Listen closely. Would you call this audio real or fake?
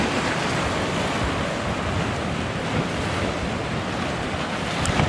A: real